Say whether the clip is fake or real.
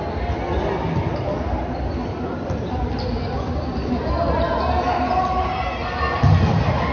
real